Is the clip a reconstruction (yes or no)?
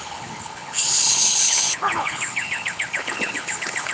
yes